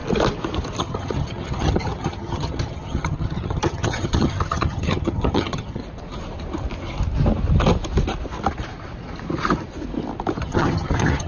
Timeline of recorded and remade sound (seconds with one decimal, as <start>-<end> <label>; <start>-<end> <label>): 0.0-0.8 recorded; 0.8-5.8 remade; 5.8-10.4 recorded; 10.4-11.3 remade